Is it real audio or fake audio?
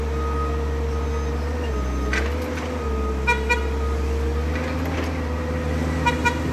real